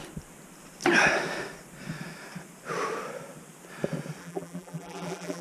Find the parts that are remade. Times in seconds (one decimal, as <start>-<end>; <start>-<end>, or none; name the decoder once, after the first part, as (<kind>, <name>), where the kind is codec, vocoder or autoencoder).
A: 4.2-5.4 (vocoder, BigVGAN v2)